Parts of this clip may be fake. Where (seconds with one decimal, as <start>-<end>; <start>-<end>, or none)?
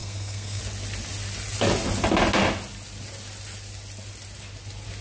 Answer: 0.0-0.6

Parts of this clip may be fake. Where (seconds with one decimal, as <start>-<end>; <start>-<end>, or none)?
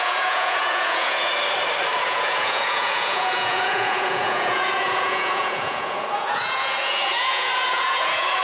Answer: 0.0-1.3; 2.0-8.4